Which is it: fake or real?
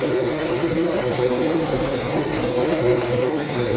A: fake